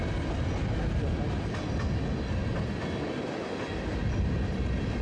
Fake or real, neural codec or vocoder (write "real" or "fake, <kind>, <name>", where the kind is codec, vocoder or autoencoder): real